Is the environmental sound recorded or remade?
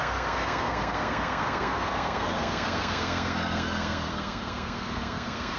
remade